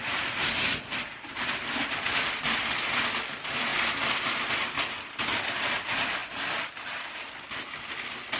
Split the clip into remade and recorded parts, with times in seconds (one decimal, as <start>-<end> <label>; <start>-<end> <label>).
0.0-8.4 recorded